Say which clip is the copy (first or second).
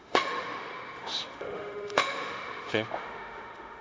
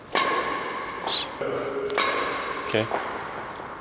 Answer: first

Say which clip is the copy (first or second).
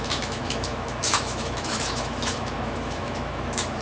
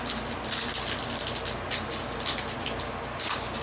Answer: first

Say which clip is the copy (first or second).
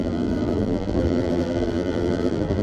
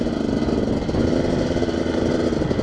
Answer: first